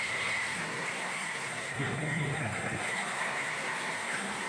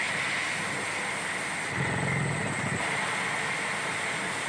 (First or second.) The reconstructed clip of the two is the first